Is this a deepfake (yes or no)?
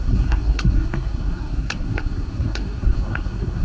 yes